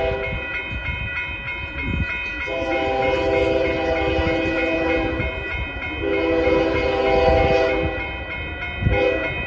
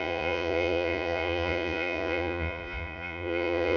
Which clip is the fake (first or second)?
second